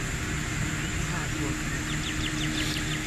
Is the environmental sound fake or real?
real